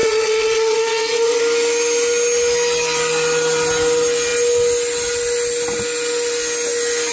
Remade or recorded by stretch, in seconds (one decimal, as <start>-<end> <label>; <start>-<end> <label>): 0.0-1.4 remade; 1.4-7.1 recorded